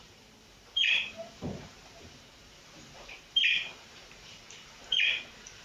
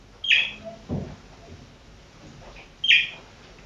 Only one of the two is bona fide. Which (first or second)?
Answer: second